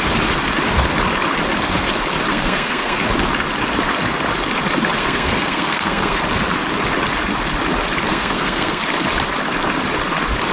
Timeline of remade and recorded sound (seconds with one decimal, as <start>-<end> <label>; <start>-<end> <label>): 0.0-2.3 recorded; 2.3-3.0 remade; 3.0-5.0 recorded; 5.0-6.2 remade; 6.2-8.1 recorded; 8.1-8.8 remade; 8.8-10.5 recorded